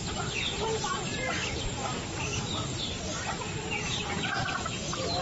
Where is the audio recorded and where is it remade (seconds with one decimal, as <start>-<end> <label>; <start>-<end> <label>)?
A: 0.0-5.2 recorded